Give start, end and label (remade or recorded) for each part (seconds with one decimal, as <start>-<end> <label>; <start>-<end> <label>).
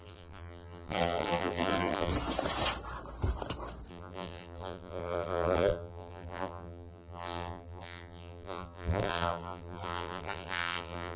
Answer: 0.0-2.1 remade; 2.1-3.9 recorded; 3.9-11.2 remade